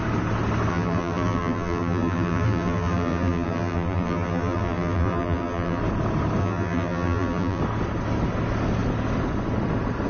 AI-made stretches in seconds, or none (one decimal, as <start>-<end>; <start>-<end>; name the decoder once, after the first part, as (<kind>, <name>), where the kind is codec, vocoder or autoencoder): 0.7-5.8 (vocoder, BigVGAN v2); 6.4-7.6